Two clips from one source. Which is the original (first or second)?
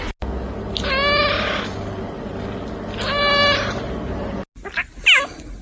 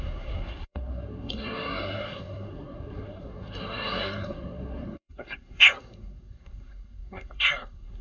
first